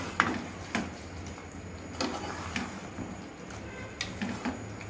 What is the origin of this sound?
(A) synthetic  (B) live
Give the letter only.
B